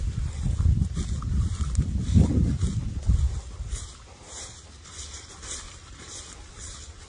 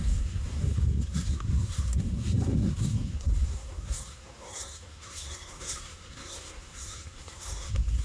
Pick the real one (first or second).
first